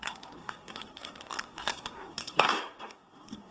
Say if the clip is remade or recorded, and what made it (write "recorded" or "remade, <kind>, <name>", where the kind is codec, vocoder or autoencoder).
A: remade, codec, SNAC